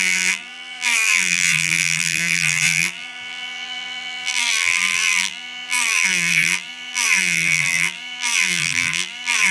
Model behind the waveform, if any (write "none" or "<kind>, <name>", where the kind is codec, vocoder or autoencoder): vocoder, BigVGAN v2